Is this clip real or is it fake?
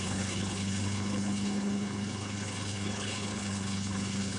fake